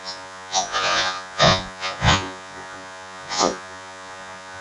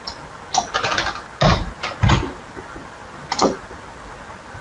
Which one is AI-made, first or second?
first